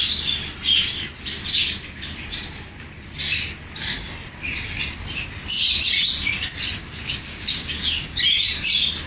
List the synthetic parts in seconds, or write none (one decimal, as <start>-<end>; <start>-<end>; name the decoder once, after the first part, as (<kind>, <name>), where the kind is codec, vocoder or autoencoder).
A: 6.8-8.2 (codec, DAC)